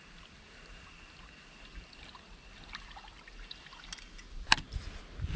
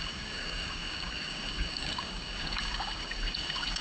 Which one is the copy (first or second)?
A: second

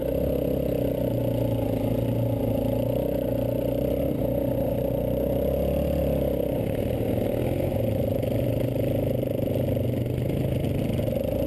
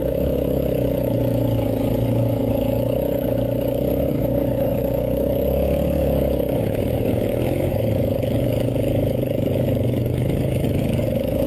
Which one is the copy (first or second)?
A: second